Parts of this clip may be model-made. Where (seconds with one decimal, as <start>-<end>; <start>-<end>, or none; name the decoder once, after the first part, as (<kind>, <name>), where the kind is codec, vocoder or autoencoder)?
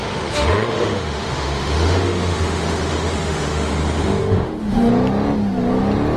0.0-3.7 (autoencoder, DAC-VAE); 4.2-4.9